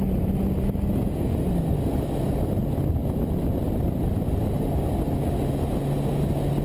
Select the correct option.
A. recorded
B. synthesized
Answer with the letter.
A